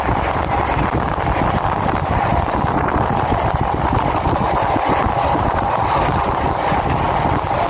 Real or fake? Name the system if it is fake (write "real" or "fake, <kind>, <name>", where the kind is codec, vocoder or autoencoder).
real